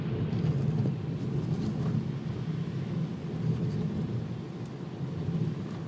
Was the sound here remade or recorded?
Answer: recorded